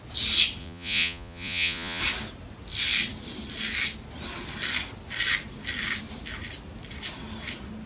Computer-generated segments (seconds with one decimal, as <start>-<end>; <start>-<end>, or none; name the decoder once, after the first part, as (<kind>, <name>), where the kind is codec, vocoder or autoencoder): 0.6-2.0 (vocoder, Vocos)